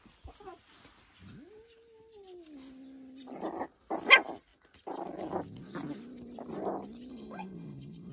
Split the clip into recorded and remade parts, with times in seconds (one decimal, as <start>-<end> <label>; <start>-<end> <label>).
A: 0.0-7.1 recorded; 7.1-8.1 remade